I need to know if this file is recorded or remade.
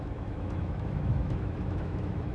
remade